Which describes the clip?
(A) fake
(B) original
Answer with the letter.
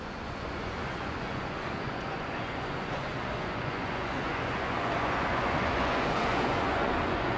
A